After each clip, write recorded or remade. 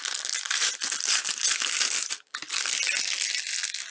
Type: recorded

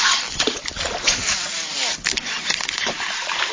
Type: recorded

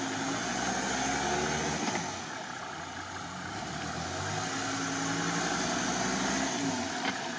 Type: recorded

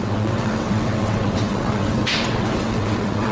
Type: remade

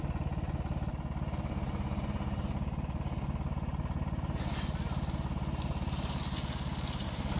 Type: recorded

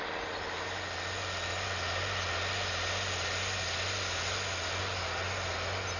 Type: recorded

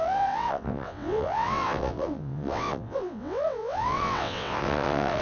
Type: remade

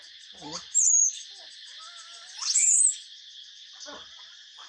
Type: recorded